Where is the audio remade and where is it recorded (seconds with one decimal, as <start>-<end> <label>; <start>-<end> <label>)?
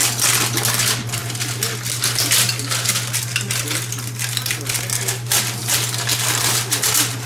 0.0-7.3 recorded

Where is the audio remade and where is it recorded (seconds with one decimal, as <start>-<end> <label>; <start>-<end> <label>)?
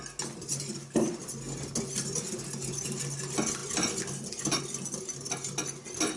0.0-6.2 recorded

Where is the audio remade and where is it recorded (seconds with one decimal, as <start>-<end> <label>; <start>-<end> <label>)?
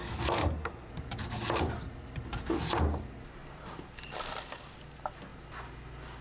0.0-0.4 recorded; 0.4-0.9 remade; 0.9-6.2 recorded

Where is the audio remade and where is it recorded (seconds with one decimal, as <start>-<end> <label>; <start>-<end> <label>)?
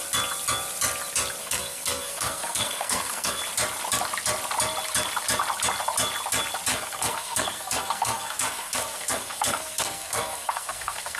0.0-1.4 recorded; 1.4-3.4 remade; 3.4-6.7 recorded; 6.7-11.2 remade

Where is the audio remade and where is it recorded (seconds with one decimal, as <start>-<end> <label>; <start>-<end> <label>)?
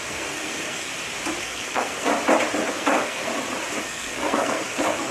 0.0-0.9 remade; 0.9-1.4 recorded; 1.4-2.1 remade; 2.1-2.7 recorded; 2.7-3.3 remade; 3.3-3.8 recorded; 3.8-5.1 remade